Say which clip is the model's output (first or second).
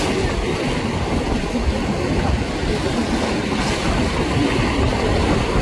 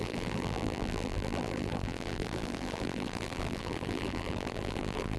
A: second